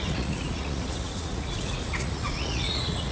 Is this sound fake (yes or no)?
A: yes